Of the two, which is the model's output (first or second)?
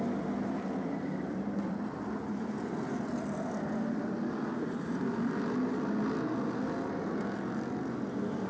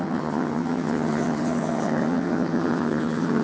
second